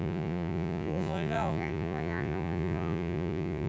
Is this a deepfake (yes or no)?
yes